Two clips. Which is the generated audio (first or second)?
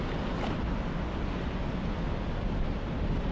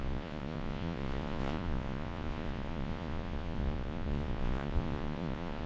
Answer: second